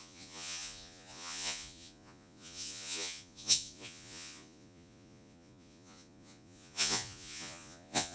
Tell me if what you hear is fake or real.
fake